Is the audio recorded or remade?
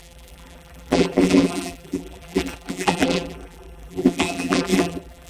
remade